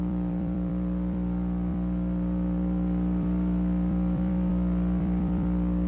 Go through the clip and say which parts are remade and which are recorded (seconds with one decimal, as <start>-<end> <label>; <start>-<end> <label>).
0.0-5.9 remade